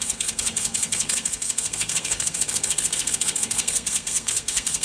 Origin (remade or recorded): remade